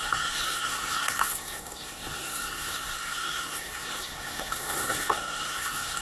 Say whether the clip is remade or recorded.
remade